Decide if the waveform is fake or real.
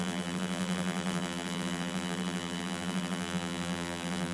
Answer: fake